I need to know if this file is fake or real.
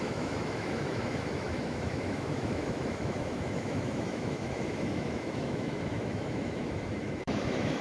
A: fake